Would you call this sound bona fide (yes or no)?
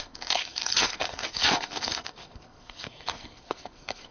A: no